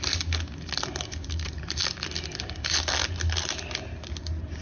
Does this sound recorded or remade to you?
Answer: recorded